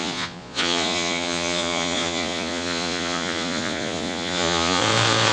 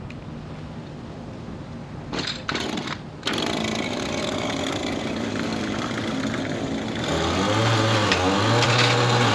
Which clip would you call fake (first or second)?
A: first